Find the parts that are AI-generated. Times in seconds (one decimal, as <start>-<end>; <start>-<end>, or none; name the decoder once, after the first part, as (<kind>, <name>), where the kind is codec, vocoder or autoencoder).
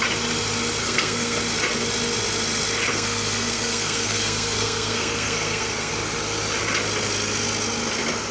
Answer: 0.8-1.4 (codec, SNAC); 2.9-5.9